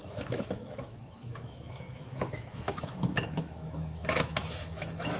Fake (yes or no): yes